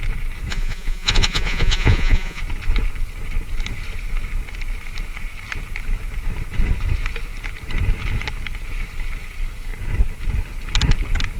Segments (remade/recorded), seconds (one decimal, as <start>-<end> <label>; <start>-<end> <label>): 0.0-0.5 recorded; 0.5-2.4 remade; 2.4-11.4 recorded